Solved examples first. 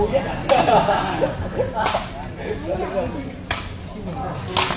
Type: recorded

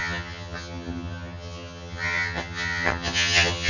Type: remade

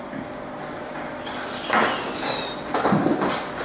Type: recorded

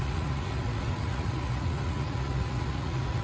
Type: remade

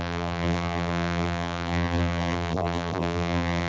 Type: remade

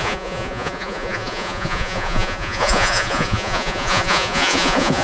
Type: remade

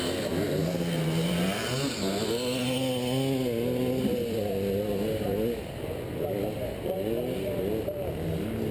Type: recorded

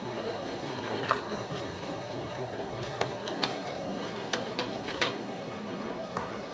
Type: remade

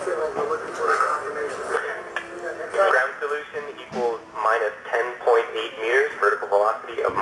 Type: recorded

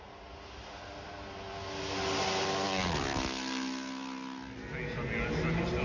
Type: recorded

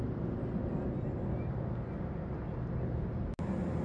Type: recorded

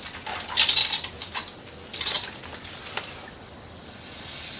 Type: recorded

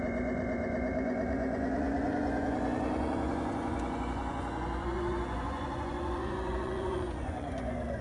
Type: remade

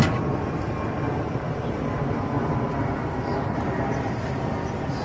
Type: recorded